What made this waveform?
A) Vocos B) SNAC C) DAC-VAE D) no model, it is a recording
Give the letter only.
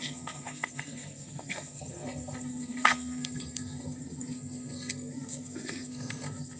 B